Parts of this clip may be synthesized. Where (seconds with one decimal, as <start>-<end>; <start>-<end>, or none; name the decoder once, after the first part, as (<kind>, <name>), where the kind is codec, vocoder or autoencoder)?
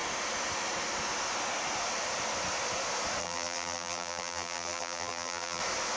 3.2-5.6 (vocoder, BigVGAN v2)